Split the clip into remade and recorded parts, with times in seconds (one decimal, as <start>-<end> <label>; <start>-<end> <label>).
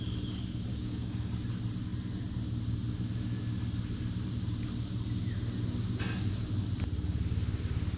0.0-0.7 recorded; 0.7-1.3 remade; 1.3-8.0 recorded